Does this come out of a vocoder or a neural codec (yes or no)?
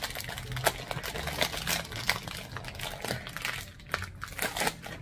no